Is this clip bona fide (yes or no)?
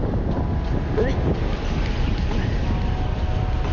yes